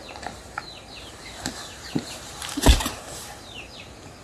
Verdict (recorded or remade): remade